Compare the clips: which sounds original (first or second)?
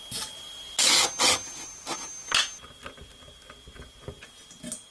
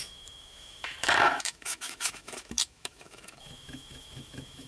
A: first